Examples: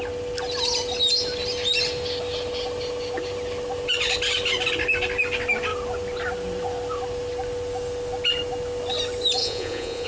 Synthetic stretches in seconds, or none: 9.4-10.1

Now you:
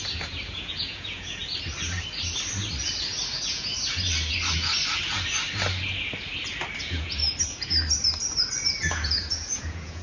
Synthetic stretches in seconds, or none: 0.0-1.4; 3.3-3.7; 6.8-7.2; 8.9-10.0

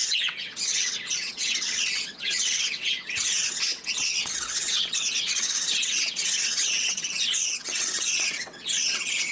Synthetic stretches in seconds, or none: 0.0-9.3

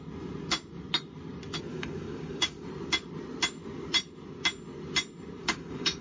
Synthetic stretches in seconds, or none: 1.7-2.7; 5.4-6.0